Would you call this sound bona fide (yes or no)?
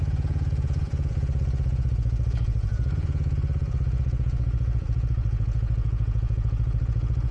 no